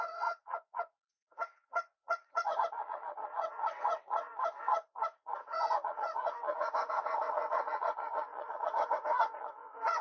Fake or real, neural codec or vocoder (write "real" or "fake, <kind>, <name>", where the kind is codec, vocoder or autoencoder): fake, vocoder, WaveNeXt